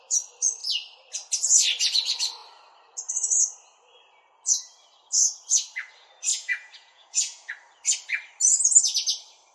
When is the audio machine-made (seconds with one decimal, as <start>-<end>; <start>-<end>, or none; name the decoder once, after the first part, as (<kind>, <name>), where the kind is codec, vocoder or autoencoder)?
6.3-7.5 (vocoder, Vocos)